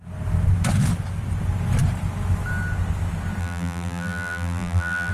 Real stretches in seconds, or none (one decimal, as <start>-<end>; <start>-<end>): 0.0-3.4